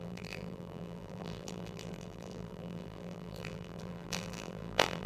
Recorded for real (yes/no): no